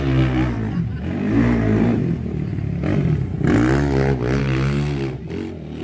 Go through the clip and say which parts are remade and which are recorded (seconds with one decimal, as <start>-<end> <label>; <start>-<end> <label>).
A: 0.0-5.8 recorded